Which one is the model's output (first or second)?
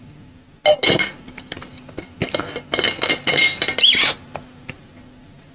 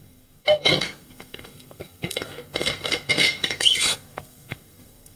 second